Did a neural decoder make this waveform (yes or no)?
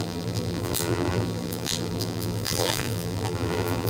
yes